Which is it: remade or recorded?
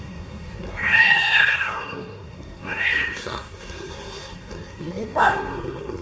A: remade